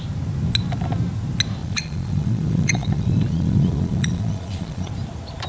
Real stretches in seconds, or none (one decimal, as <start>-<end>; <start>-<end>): 0.0-1.6; 4.9-5.5